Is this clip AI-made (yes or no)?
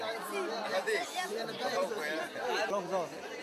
no